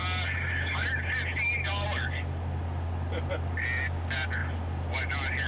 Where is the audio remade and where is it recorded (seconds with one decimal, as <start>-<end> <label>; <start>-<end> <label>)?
0.0-5.5 recorded